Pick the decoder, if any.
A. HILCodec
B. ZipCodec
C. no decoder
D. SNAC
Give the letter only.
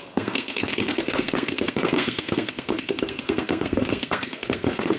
D